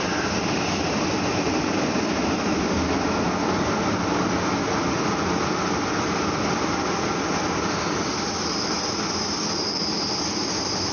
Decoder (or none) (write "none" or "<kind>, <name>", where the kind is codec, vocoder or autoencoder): none